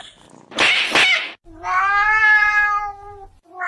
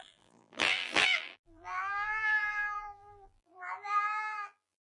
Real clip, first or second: first